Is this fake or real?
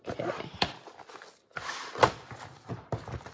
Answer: real